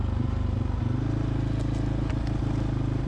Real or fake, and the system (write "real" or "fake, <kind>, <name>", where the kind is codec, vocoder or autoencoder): real